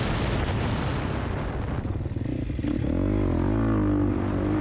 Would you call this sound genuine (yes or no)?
yes